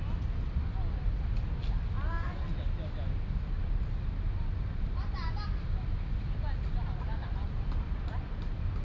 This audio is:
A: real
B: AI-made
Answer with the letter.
A